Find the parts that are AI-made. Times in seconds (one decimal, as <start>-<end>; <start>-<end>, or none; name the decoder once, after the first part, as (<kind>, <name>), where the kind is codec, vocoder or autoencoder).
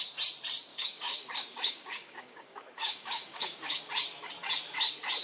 0.7-3.8 (codec, DAC)